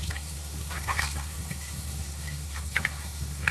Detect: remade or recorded remade